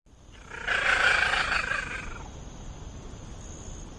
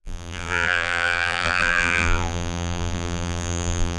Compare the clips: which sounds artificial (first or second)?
second